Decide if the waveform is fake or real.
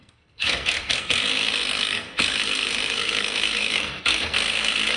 fake